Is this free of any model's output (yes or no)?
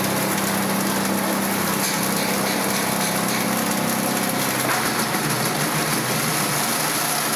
yes